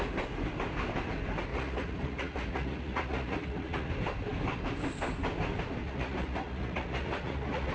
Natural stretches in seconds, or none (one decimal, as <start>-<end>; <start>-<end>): 0.0-1.5; 3.9-5.8